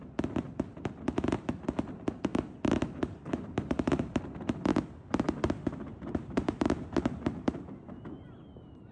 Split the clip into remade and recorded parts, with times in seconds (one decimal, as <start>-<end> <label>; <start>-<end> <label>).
0.0-2.3 recorded; 2.3-4.2 remade; 4.2-5.9 recorded; 5.9-8.9 remade